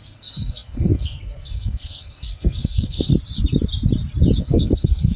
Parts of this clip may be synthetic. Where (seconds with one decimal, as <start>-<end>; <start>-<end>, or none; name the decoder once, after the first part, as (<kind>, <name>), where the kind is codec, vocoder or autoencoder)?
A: 0.0-3.1 (codec, SNAC); 4.4-5.2